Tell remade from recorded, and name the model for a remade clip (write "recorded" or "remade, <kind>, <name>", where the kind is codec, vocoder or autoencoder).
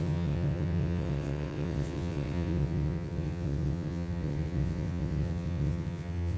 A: remade, vocoder, WaveNeXt